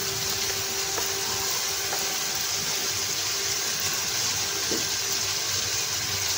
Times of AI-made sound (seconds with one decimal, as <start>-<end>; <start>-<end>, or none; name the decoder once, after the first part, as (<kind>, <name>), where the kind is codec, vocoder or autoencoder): none